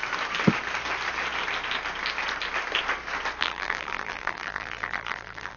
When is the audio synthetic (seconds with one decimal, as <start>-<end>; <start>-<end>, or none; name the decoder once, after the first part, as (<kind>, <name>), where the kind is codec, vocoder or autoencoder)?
3.4-5.6 (vocoder, BigVGAN v2)